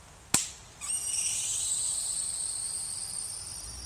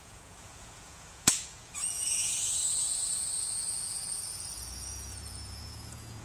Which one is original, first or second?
first